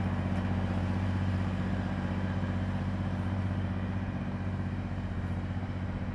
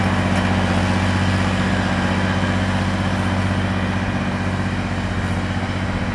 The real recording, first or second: second